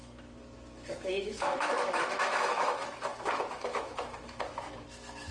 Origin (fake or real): fake